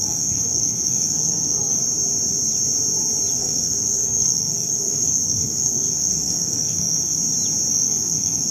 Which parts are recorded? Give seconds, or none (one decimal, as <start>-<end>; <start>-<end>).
1.8-3.3; 7.2-7.7